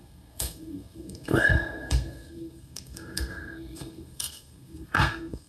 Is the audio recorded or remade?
remade